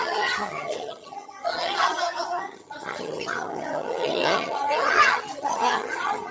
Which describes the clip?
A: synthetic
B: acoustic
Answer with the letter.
A